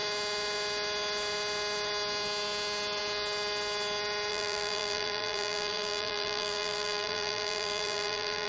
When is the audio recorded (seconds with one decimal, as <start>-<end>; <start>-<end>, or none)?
0.0-4.3